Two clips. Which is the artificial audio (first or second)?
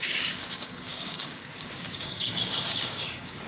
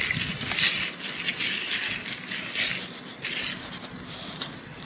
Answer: first